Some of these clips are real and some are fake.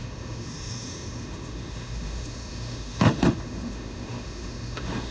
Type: fake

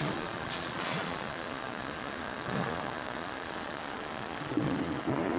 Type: fake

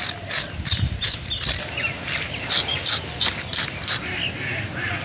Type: real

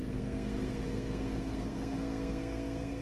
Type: fake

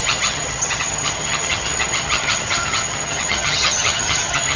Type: fake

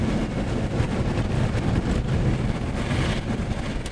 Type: real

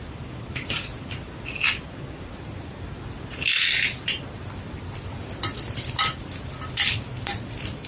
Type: fake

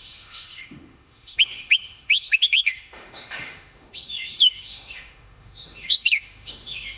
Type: fake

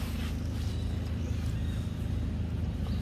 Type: real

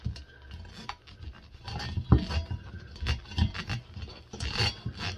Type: real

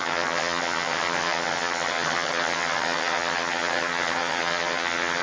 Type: fake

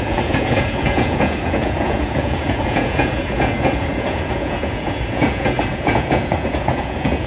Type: fake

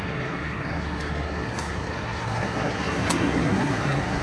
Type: fake